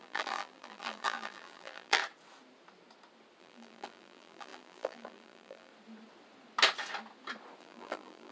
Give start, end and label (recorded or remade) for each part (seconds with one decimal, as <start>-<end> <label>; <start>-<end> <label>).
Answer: 0.0-2.0 remade; 2.0-3.4 recorded; 3.4-5.7 remade; 5.7-7.6 recorded; 7.6-8.3 remade